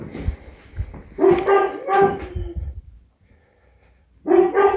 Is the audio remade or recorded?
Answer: recorded